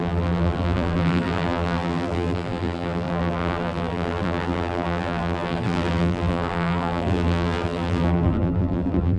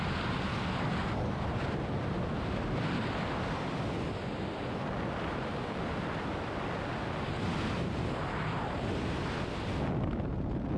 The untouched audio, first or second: second